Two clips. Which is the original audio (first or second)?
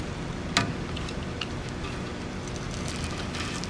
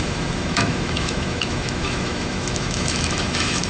first